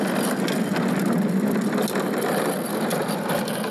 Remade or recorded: recorded